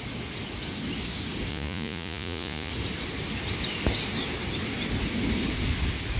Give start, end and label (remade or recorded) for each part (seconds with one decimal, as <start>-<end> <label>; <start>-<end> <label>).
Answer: 0.0-1.5 recorded; 1.5-2.7 remade; 2.7-6.2 recorded